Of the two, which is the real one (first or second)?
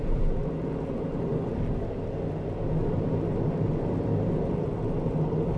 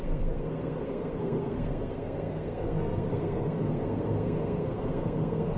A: first